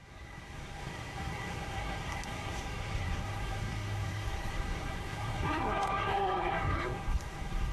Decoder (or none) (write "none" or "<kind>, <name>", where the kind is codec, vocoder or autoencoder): codec, SNAC